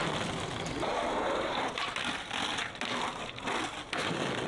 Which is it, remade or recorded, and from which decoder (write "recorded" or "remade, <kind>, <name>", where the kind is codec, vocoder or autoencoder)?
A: recorded